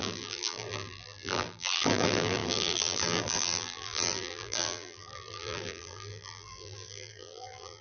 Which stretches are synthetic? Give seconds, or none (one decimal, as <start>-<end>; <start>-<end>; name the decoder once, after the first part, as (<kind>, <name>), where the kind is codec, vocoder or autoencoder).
0.0-7.8 (vocoder, BigVGAN v2)